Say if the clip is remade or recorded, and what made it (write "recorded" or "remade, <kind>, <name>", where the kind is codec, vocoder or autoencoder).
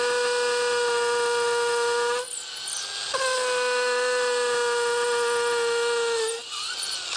recorded